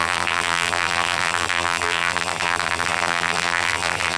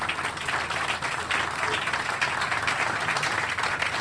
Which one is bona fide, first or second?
second